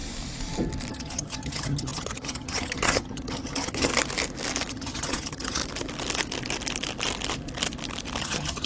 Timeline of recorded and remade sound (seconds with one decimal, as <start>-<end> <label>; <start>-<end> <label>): 0.0-0.9 recorded; 0.9-3.9 remade; 3.9-4.7 recorded; 4.7-5.6 remade; 5.6-8.2 recorded; 8.2-8.7 remade